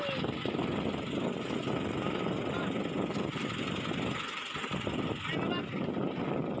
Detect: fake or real real